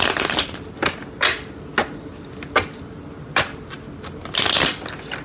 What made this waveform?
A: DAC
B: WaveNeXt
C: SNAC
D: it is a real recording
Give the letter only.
D